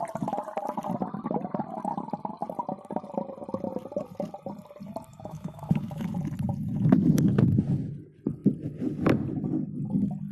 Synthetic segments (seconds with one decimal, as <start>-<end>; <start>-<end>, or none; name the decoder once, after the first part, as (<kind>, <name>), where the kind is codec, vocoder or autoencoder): 5.1-6.1 (autoencoder, DAC-VAE)